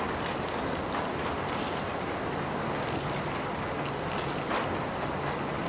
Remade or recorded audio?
recorded